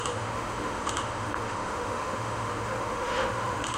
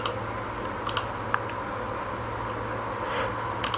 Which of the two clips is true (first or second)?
second